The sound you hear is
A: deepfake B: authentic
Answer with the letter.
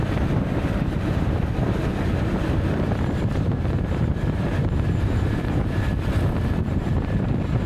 A